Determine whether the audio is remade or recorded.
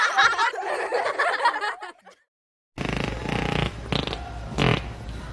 recorded